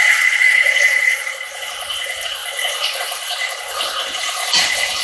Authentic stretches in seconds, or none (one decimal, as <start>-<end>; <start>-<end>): none